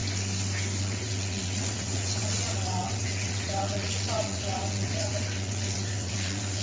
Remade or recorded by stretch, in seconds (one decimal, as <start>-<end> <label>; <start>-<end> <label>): 0.0-0.8 recorded; 0.8-6.6 remade